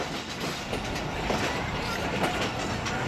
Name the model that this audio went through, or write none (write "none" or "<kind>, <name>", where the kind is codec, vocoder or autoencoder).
none